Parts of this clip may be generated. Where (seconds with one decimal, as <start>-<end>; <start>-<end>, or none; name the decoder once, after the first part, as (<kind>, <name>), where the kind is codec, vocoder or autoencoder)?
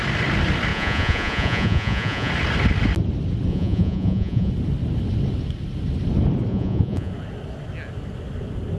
0.7-2.3 (vocoder, Vocos); 3.5-4.5; 6.5-7.1